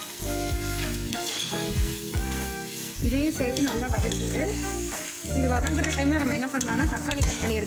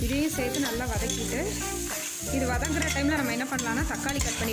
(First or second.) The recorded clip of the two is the second